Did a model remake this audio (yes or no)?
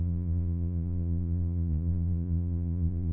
yes